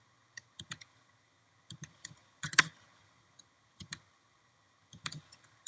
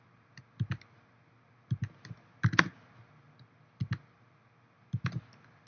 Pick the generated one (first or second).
first